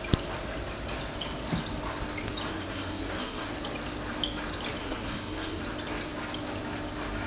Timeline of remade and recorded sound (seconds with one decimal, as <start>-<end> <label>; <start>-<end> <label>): 0.0-2.5 recorded; 2.5-3.5 remade; 3.5-4.8 recorded; 4.8-5.6 remade; 5.6-7.3 recorded